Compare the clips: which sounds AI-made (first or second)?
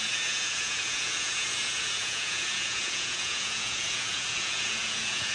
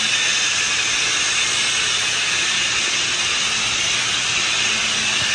first